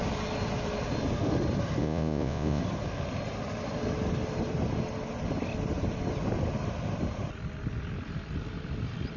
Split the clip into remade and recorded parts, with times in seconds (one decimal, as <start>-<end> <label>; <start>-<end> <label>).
0.0-1.8 recorded; 1.8-2.6 remade; 2.6-9.2 recorded